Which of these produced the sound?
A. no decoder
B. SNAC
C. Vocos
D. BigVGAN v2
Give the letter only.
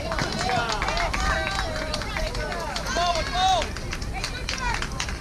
A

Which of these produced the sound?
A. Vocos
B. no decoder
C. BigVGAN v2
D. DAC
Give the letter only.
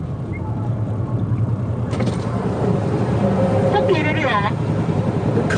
C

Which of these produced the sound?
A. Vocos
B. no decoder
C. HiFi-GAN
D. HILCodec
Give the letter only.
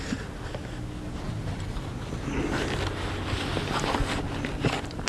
B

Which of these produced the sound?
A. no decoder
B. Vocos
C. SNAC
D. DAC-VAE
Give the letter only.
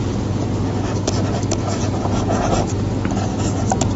A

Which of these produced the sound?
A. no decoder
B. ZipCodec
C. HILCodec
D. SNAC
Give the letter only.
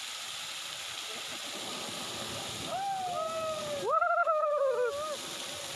A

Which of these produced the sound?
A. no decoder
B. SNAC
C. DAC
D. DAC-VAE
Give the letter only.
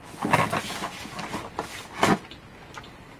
A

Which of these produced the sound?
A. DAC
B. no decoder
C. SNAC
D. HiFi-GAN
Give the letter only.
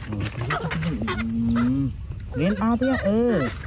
B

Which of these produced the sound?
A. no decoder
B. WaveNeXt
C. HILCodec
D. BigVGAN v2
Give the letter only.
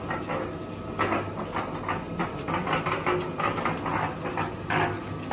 A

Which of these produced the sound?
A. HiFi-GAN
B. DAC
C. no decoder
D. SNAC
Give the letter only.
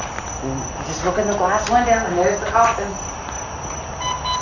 C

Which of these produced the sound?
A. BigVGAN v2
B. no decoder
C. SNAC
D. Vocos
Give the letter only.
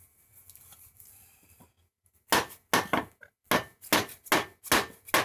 B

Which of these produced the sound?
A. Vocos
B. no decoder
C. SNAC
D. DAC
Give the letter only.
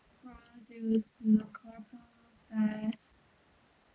B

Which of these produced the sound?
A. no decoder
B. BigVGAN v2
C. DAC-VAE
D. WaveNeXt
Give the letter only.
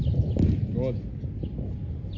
A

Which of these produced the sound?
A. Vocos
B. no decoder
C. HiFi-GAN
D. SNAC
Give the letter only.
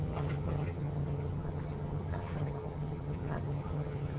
C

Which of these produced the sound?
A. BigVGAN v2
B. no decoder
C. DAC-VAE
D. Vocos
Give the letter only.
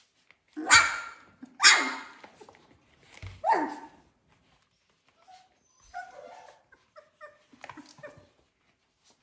B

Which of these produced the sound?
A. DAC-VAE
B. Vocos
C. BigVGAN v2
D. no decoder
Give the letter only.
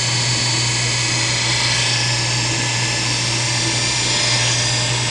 D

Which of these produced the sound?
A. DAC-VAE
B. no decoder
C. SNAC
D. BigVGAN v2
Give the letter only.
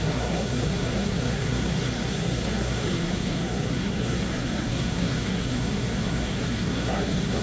C